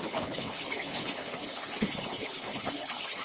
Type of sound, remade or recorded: remade